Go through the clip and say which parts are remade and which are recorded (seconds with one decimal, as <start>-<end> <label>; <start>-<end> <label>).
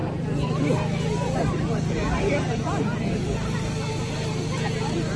0.0-2.8 remade; 2.8-5.2 recorded